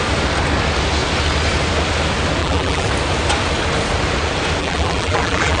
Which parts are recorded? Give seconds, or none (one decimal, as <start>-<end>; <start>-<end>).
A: 0.0-2.4; 2.9-4.6

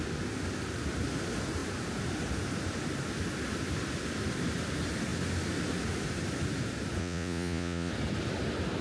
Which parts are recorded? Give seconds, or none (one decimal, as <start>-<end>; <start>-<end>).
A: 0.0-7.0; 7.9-8.8

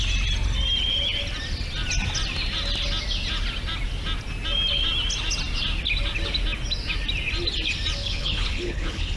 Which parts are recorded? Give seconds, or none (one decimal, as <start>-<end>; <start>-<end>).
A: 0.0-8.0

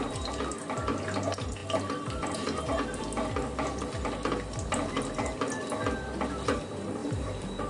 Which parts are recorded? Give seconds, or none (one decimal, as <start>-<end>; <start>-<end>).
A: 0.0-7.0

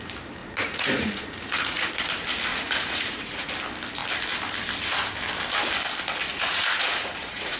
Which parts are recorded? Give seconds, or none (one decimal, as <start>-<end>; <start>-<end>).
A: 0.0-0.4; 1.9-2.5; 3.5-6.3

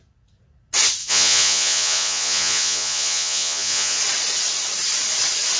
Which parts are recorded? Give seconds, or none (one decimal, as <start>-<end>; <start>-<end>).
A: 0.0-1.0; 4.0-5.6

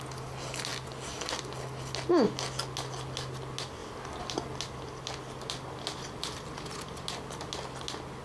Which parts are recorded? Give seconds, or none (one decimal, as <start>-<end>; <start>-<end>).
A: 0.0-8.2